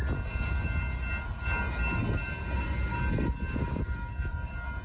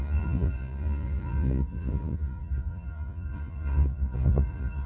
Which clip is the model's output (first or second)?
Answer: second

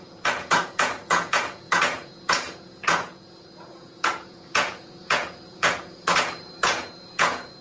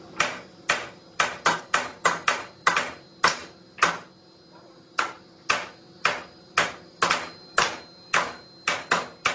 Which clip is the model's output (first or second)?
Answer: first